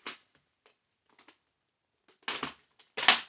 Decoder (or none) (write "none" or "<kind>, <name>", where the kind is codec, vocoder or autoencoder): none